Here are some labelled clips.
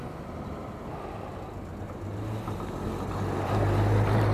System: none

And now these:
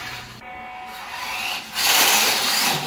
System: none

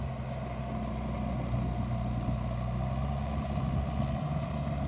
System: none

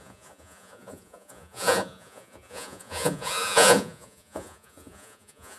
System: vocoder, Vocos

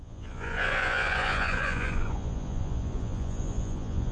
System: vocoder, Vocos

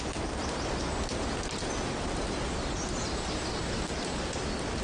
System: none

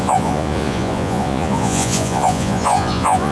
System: vocoder, Vocos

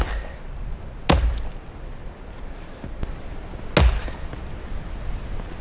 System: none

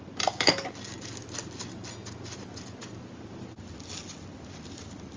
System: none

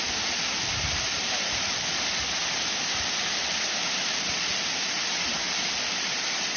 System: none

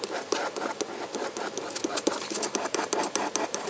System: none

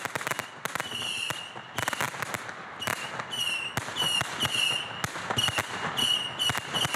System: none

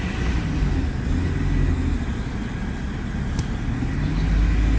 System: none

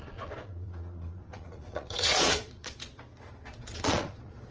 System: vocoder, Vocos